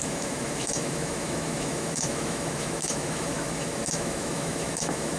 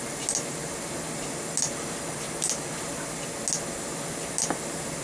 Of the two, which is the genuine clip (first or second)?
second